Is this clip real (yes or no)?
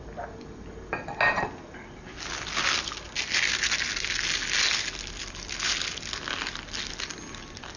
yes